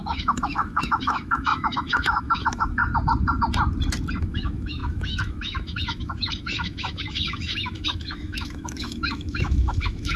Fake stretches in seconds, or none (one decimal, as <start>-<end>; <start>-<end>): 0.0-2.8; 4.2-10.2